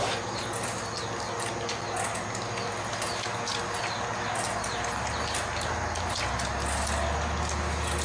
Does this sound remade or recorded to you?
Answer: recorded